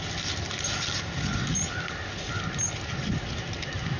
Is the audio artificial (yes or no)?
no